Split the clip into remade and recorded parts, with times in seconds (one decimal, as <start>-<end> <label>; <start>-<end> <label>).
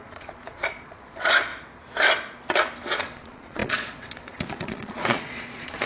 0.0-1.5 remade; 1.5-2.9 recorded; 2.9-5.9 remade